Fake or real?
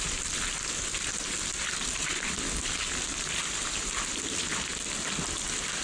real